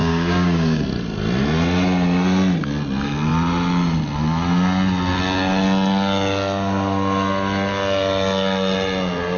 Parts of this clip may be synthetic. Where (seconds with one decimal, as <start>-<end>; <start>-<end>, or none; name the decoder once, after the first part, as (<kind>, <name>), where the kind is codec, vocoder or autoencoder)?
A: 0.0-0.8 (codec, DAC)